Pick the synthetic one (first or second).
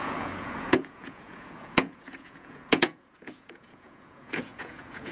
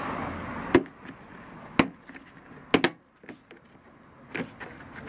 first